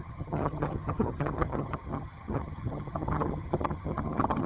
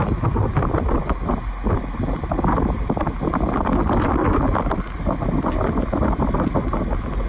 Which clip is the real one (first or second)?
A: second